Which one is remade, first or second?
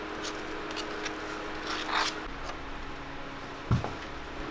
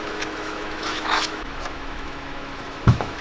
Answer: second